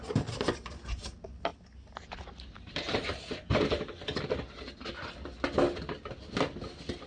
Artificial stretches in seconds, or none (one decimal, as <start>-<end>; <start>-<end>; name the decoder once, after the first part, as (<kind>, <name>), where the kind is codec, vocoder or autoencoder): none